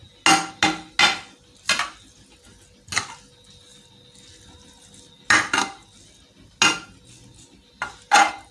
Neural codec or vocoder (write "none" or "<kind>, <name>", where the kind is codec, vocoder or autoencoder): none